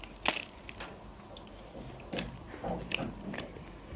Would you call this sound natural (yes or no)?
yes